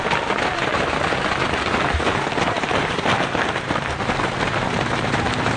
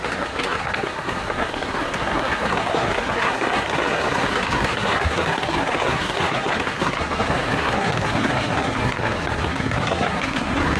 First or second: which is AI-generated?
second